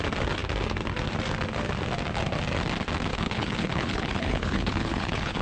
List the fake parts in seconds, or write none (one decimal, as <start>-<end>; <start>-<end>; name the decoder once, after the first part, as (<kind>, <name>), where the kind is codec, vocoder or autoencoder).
3.1-5.4 (codec, HILCodec)